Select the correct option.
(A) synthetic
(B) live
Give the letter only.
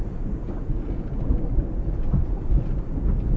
B